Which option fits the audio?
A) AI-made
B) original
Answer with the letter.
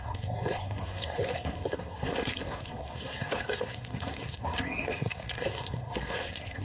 A